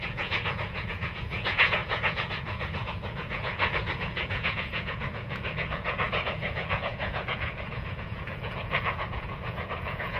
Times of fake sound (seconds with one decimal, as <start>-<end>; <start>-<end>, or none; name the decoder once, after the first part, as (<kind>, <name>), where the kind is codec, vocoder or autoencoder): 0.0-10.2 (vocoder, Vocos)